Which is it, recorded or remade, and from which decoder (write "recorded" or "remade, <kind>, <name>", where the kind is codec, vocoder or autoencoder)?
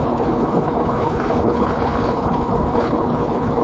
remade, codec, HILCodec